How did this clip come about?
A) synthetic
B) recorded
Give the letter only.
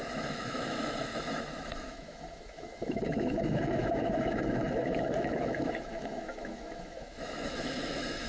A